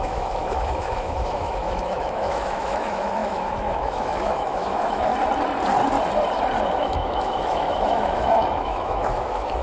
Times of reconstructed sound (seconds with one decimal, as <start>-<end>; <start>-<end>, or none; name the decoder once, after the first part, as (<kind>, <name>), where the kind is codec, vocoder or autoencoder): 0.0-5.1 (autoencoder, DAC-VAE); 6.6-9.6